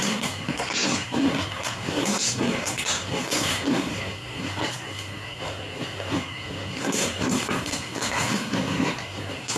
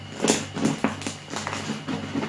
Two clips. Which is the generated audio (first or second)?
first